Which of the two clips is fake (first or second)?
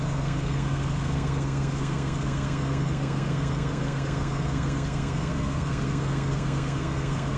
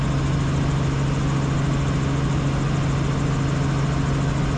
first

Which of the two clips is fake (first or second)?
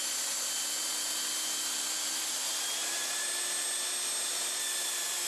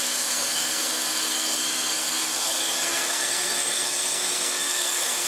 second